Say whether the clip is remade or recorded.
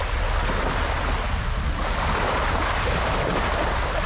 recorded